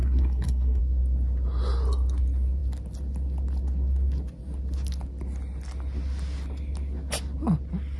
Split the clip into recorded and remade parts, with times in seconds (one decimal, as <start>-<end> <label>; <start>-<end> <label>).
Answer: 0.0-0.8 remade; 0.8-8.0 recorded